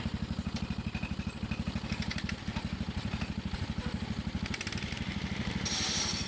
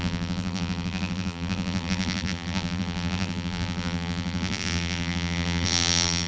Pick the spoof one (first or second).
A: second